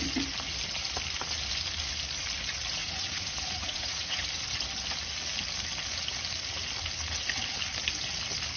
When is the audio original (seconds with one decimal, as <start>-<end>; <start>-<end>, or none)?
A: 0.0-2.8; 4.2-8.6